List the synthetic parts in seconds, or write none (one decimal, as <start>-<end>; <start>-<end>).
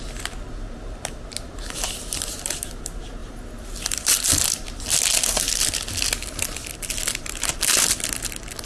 none